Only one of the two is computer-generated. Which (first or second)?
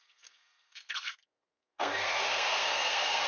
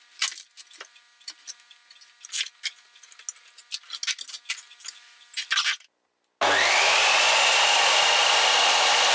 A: first